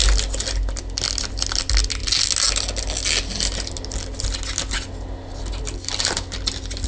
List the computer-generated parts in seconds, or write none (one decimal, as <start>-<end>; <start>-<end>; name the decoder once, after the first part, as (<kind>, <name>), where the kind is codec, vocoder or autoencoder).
none